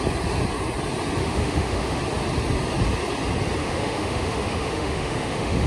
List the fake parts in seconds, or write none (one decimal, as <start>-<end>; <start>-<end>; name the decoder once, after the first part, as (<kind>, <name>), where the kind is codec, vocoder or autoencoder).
1.2-2.0 (autoencoder, DAC-VAE); 3.6-5.7